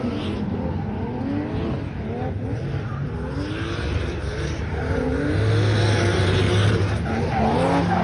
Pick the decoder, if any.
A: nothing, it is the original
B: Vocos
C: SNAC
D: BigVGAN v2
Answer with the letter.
A